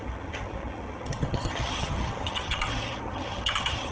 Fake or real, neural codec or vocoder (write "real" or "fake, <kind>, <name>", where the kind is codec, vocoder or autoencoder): fake, vocoder, HiFi-GAN